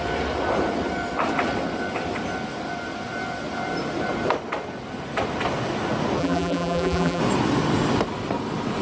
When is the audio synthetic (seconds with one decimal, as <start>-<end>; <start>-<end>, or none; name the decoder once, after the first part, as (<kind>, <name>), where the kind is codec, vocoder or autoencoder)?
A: 6.2-7.2 (vocoder, BigVGAN v2)